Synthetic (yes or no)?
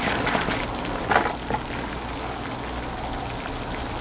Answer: no